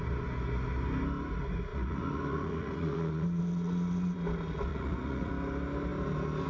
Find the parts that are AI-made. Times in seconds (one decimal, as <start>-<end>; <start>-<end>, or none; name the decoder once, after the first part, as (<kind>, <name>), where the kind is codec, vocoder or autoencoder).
1.7-3.4 (vocoder, Vocos); 4.7-5.3